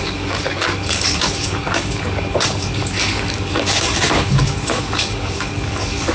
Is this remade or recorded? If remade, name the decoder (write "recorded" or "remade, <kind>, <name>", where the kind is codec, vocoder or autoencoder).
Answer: remade, codec, DAC